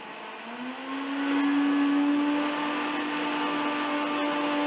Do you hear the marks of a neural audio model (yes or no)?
no